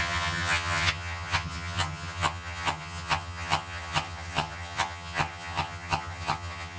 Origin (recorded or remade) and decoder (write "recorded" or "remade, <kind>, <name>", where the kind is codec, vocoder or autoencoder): remade, vocoder, HiFi-GAN